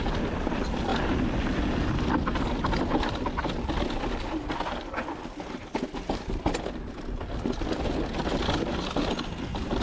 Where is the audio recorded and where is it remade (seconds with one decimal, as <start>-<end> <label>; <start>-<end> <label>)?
0.0-9.8 recorded